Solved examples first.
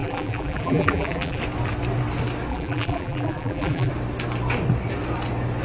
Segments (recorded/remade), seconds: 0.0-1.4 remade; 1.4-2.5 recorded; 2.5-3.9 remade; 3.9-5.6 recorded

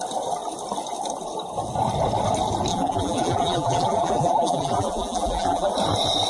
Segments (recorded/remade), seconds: 0.0-2.7 recorded; 2.7-5.7 remade; 5.7-6.3 recorded

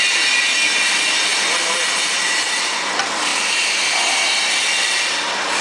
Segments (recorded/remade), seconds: 0.0-3.3 recorded; 3.3-3.8 remade; 3.8-5.6 recorded

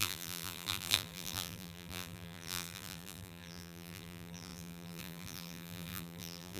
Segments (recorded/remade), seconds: 0.0-6.6 remade